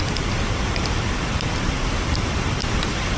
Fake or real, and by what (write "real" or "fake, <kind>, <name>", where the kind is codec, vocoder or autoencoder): real